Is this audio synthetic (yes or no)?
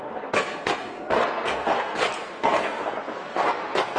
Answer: yes